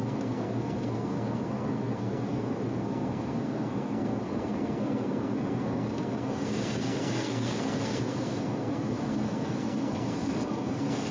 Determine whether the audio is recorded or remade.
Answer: remade